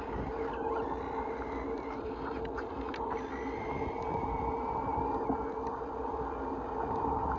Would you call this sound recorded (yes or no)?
yes